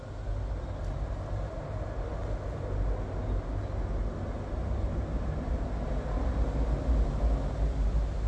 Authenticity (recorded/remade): recorded